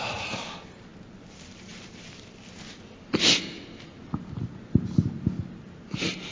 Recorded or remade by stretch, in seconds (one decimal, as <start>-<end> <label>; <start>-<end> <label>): 0.0-6.3 recorded